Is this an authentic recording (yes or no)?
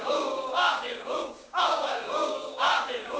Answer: no